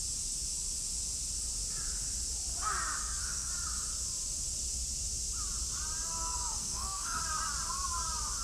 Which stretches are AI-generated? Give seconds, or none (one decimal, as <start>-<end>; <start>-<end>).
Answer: 3.0-3.5; 6.2-7.2